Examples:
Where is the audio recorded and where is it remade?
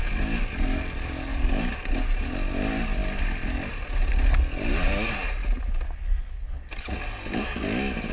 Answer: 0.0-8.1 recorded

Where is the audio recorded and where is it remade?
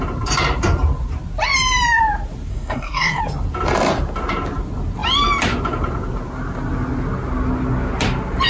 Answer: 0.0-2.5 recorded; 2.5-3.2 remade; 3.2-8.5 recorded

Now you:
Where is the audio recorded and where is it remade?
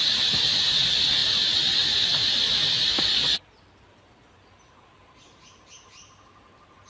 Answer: 0.0-6.9 recorded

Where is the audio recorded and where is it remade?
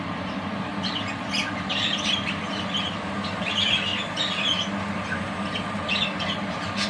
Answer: 0.0-0.7 remade; 0.7-1.6 recorded; 1.6-3.9 remade; 3.9-6.5 recorded; 6.5-6.9 remade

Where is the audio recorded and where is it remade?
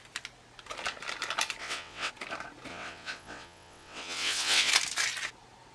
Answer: 0.0-1.6 recorded; 1.6-2.1 remade; 2.1-2.7 recorded; 2.7-4.7 remade; 4.7-5.7 recorded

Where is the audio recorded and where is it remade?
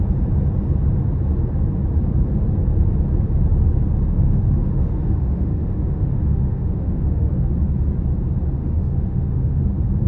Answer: 0.0-4.1 recorded; 4.1-7.5 remade; 7.5-8.6 recorded; 8.6-9.6 remade; 9.6-10.1 recorded